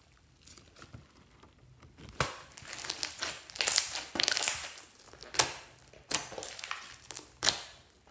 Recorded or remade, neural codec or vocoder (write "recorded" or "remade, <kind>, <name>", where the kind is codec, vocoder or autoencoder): recorded